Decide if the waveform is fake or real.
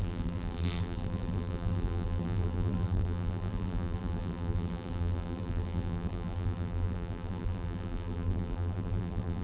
fake